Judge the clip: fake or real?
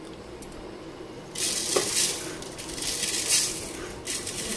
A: real